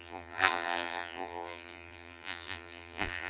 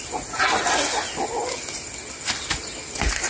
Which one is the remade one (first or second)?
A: first